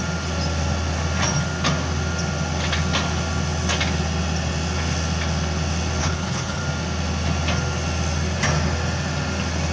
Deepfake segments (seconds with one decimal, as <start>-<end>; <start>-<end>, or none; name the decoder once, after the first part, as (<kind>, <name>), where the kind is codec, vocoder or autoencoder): 6.0-6.6 (codec, HILCodec)